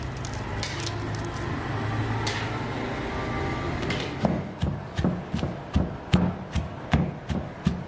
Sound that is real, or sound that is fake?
real